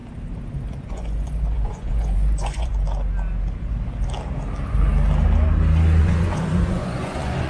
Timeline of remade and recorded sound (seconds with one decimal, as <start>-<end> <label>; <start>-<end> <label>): 0.0-0.8 recorded; 0.8-2.7 remade; 2.7-6.0 recorded; 6.0-7.5 remade